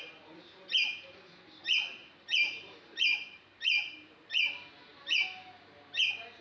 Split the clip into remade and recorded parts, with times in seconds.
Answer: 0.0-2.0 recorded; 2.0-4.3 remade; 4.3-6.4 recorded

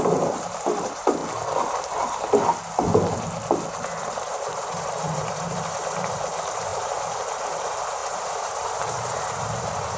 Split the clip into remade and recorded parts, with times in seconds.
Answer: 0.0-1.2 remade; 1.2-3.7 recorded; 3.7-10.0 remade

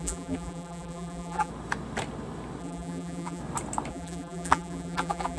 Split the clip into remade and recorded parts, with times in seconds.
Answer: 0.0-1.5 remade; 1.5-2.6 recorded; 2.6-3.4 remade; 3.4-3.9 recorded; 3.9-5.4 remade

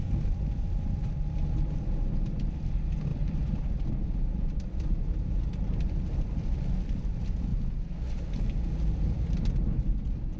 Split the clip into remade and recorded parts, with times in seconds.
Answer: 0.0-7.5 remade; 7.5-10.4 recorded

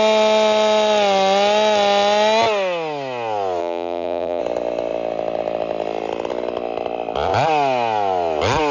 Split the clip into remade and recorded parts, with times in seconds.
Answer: 0.0-3.6 recorded; 3.6-4.4 remade; 4.4-8.7 recorded